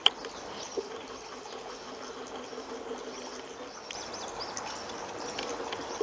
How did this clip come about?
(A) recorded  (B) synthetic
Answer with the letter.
A